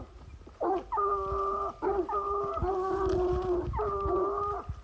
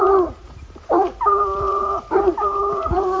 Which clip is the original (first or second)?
first